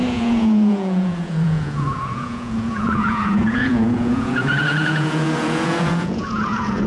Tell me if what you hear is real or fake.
fake